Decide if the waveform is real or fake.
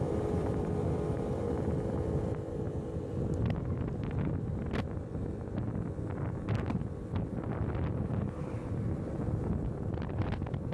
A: real